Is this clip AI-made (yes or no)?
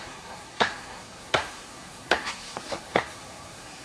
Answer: yes